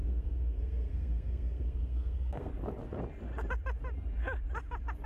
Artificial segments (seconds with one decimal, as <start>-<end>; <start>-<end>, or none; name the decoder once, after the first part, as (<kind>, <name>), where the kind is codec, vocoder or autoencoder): 0.0-2.5 (codec, SNAC)